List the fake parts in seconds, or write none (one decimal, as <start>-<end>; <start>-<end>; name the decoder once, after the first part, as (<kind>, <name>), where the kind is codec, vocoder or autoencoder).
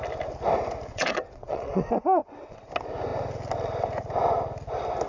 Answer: 0.9-1.7 (vocoder, WaveNeXt); 2.2-2.7